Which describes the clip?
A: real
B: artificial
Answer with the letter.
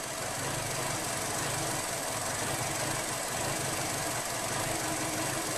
A